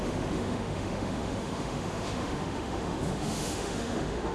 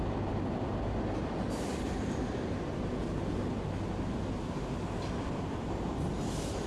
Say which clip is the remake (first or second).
first